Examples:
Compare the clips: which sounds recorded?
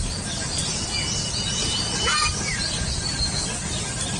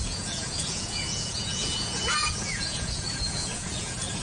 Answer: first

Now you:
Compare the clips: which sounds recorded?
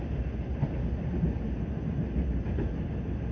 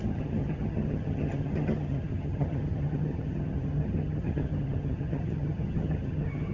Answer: first